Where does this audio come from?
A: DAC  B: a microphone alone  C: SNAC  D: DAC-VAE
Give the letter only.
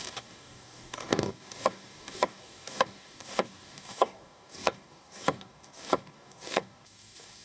A